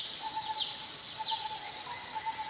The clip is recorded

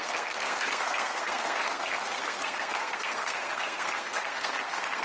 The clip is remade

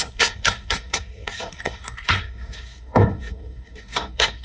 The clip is remade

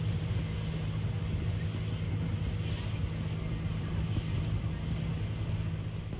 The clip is recorded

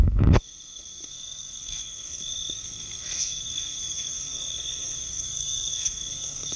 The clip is remade